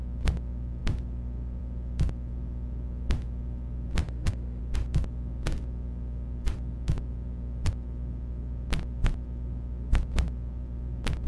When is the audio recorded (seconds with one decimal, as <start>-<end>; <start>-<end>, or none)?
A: 0.0-4.0; 4.6-11.3